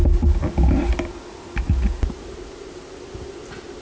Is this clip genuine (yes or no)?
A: yes